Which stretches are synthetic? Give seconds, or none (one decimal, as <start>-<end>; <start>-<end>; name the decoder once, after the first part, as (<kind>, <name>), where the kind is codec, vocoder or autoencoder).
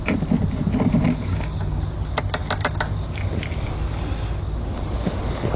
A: 1.3-1.8 (codec, DAC)